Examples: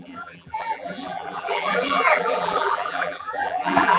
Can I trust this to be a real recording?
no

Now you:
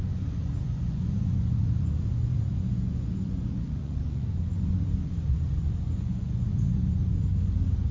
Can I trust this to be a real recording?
no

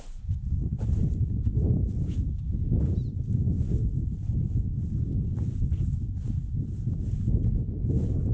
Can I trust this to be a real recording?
yes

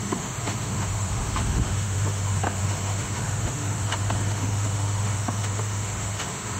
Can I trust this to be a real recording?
no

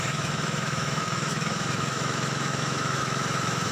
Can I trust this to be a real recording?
no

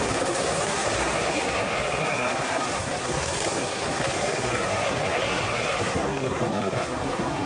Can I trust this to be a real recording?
no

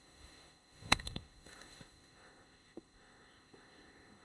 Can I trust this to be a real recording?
no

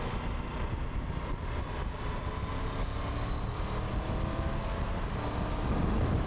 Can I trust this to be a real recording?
yes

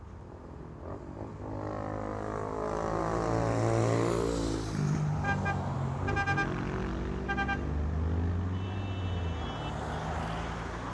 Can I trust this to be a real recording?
yes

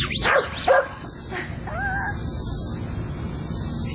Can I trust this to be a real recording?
yes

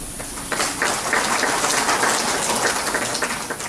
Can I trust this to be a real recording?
yes